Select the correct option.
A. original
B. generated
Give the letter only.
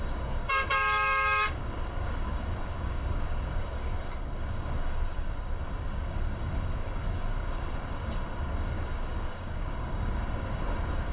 B